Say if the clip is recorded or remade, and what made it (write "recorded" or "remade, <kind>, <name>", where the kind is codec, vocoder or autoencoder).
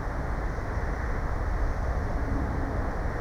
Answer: recorded